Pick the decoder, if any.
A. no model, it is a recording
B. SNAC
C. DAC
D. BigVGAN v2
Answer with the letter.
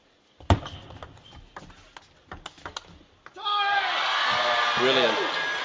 A